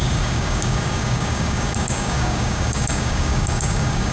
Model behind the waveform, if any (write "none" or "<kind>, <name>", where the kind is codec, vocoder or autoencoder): codec, DAC